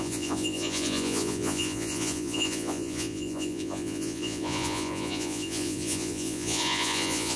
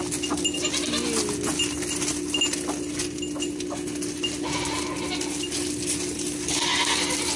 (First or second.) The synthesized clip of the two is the first